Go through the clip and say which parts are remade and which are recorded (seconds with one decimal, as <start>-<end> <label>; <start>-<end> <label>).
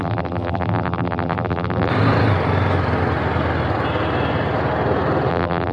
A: 0.0-1.9 remade; 1.9-5.3 recorded; 5.3-5.7 remade